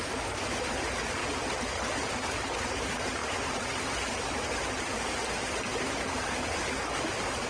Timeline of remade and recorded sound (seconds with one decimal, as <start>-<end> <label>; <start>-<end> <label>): 0.0-7.5 recorded